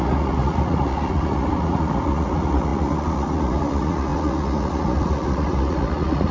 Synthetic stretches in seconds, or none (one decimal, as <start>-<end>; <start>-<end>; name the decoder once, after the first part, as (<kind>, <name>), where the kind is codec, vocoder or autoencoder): 0.0-6.3 (vocoder, Vocos)

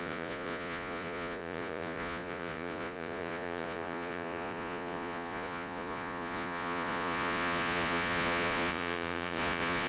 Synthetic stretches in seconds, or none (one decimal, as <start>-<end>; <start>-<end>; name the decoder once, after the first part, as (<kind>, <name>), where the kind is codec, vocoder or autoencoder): 0.0-9.9 (vocoder, Vocos)

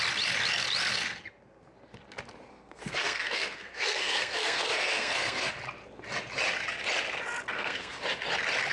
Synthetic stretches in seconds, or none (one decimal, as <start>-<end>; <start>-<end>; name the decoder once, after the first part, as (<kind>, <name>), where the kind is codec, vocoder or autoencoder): 2.5-5.5 (codec, SNAC); 7.5-8.0

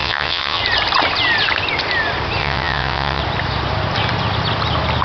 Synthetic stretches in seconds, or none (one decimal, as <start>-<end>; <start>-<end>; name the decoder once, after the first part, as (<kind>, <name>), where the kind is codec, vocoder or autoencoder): 0.0-0.6 (vocoder, WaveNeXt); 2.4-3.2

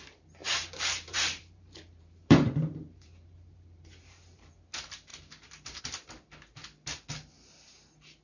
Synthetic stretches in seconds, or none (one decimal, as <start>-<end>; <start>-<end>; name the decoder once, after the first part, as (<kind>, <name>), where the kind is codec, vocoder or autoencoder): 0.4-4.5 (vocoder, BigVGAN v2); 5.1-5.8

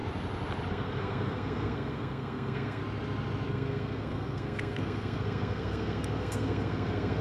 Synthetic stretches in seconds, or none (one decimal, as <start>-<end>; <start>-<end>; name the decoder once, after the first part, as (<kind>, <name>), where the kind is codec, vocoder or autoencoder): 0.7-2.8 (codec, SNAC); 3.5-7.2